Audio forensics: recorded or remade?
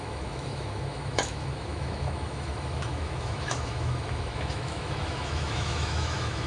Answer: remade